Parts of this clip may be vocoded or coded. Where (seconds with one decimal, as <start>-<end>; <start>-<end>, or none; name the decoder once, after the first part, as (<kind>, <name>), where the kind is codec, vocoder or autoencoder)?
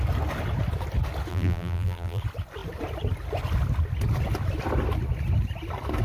1.3-2.2 (vocoder, BigVGAN v2)